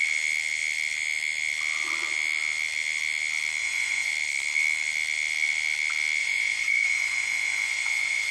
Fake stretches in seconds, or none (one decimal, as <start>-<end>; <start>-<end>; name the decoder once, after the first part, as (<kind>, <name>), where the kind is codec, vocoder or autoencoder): 3.6-4.1 (vocoder, Vocos); 6.2-8.3